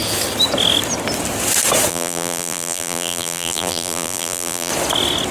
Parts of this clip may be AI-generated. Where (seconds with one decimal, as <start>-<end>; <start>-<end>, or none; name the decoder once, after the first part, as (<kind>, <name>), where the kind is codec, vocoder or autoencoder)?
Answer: 1.9-4.7 (vocoder, BigVGAN v2)